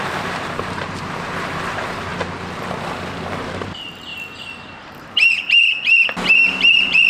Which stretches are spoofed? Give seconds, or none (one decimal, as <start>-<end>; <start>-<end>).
0.0-2.1; 2.9-4.1; 4.8-5.6; 6.2-7.1